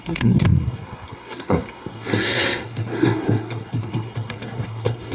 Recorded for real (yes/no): no